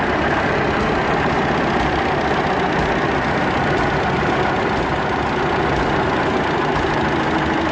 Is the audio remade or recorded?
recorded